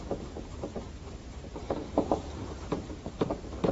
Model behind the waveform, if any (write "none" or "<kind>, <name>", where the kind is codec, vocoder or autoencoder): vocoder, BigVGAN v2